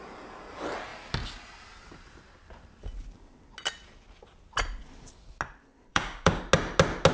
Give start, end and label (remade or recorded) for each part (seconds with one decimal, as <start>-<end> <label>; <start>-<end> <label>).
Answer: 0.0-5.9 recorded; 5.9-6.4 remade; 6.4-7.1 recorded